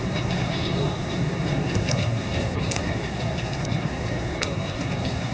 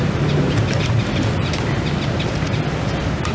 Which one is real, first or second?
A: second